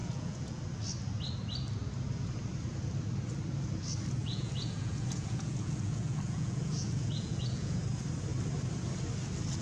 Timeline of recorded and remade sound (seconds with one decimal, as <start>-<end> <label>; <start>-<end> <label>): 0.0-0.6 remade; 0.6-4.2 recorded; 4.2-7.8 remade; 7.8-9.6 recorded